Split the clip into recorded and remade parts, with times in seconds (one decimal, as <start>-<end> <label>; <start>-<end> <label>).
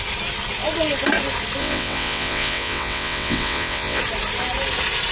0.0-1.6 recorded; 1.6-4.0 remade; 4.0-5.1 recorded